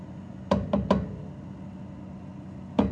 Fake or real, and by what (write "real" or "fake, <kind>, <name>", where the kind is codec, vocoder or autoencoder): real